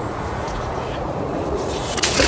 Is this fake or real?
fake